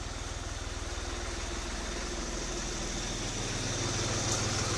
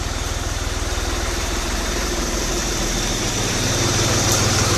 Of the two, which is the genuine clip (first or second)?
first